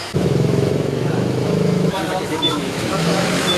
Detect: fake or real fake